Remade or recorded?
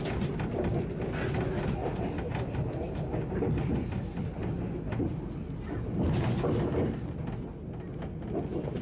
recorded